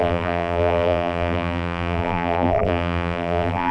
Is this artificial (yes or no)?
yes